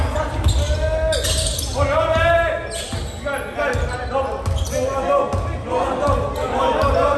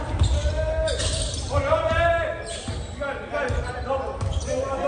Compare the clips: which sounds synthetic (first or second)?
second